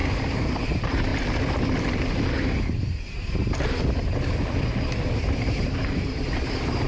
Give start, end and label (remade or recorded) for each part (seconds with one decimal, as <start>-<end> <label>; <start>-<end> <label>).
0.0-1.1 remade; 1.1-5.2 recorded; 5.2-6.9 remade